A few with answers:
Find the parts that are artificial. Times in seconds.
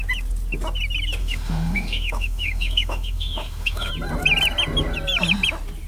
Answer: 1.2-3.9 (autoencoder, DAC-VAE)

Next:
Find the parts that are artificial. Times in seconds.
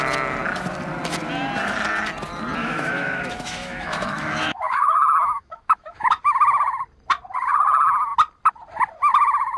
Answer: 2.6-6.2 (autoencoder, DAC-VAE)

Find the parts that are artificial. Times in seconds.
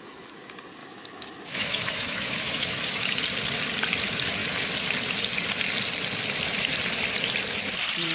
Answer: 0.8-3.2 (autoencoder, DAC-VAE)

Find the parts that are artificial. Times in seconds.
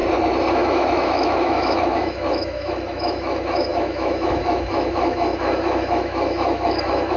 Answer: 0.5-7.2 (autoencoder, DAC-VAE)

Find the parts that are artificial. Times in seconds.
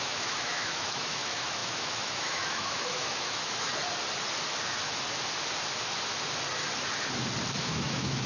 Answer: 0.0-3.7 (autoencoder, DAC-VAE); 7.6-8.3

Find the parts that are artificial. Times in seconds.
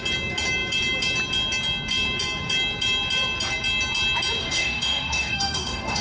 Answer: 4.4-6.0 (autoencoder, DAC-VAE)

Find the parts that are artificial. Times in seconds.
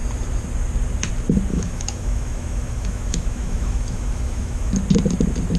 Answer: 1.5-4.7 (autoencoder, DAC-VAE)